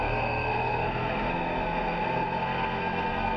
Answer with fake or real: fake